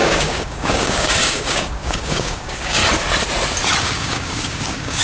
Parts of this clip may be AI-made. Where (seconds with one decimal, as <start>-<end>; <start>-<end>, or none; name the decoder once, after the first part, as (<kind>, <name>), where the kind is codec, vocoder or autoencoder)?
0.0-2.8 (codec, DAC); 3.8-5.0

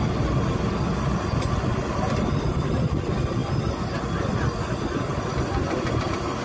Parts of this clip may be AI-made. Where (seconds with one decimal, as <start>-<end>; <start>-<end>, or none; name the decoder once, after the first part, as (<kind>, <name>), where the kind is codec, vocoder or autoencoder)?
none

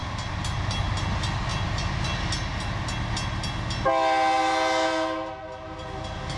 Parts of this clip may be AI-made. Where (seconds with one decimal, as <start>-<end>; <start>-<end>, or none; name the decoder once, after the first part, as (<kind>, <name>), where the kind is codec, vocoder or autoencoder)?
none

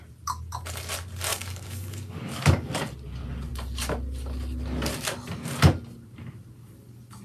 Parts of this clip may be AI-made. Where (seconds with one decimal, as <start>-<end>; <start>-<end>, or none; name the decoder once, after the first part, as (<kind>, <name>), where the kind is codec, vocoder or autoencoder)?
1.3-2.8 (codec, DAC)

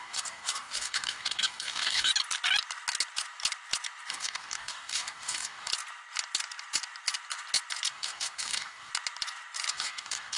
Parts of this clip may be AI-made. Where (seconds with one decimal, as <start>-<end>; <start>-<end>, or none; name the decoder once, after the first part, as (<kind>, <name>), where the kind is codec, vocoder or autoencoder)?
0.0-2.1 (codec, DAC); 4.1-5.7; 7.9-8.9; 9.7-10.4